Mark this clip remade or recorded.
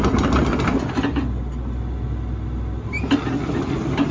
recorded